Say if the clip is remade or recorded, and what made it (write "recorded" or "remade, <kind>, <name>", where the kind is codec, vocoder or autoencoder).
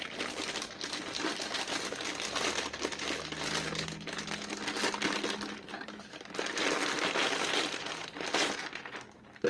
recorded